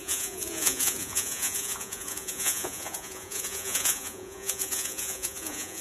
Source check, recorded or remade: remade